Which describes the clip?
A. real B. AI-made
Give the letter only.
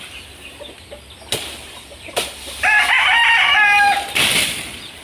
B